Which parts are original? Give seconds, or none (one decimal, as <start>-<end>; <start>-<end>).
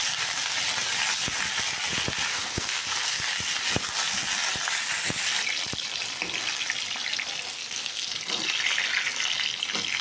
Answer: 0.0-2.3; 3.2-7.5; 8.1-10.0